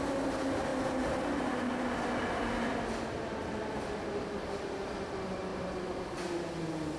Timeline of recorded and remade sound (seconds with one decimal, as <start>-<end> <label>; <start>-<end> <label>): 0.0-5.5 recorded; 5.5-6.2 remade; 6.2-7.0 recorded